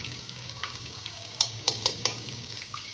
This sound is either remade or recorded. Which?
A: remade